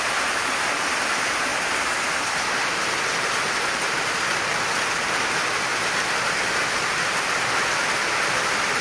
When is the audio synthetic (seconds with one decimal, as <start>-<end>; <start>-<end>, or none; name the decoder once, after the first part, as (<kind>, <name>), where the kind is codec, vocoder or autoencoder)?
none